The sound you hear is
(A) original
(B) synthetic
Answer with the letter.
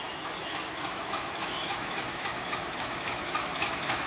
B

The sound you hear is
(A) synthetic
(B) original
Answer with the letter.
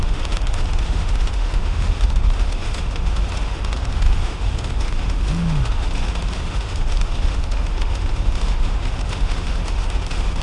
A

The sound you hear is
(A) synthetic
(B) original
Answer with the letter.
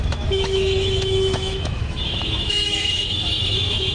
A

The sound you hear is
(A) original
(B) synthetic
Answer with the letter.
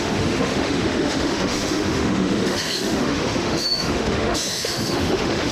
B